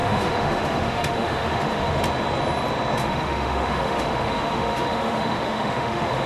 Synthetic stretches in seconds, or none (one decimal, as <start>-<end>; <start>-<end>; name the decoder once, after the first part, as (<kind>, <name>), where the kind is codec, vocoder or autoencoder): 0.0-2.0 (autoencoder, DAC-VAE); 3.0-6.3